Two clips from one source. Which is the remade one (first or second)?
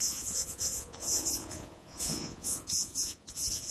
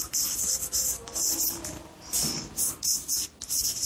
first